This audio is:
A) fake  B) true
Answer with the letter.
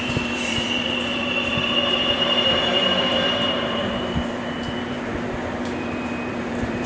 A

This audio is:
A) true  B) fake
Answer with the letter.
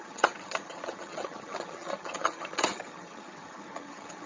B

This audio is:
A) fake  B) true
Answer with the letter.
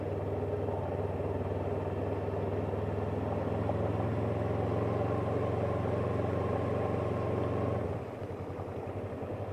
B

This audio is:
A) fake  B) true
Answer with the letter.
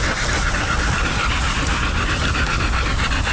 B